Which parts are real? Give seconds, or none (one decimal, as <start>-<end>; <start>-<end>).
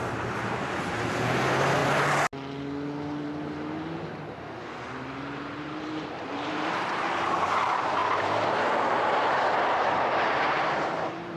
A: 1.8-5.6